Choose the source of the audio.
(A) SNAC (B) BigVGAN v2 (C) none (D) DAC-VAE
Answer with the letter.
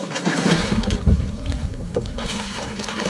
A